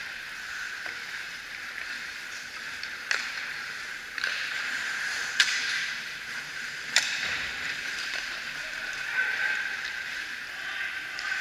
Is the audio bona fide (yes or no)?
no